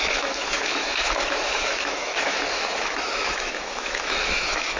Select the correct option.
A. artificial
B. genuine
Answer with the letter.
A